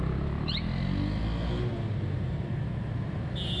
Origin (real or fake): real